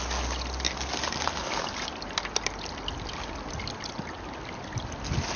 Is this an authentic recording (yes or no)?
yes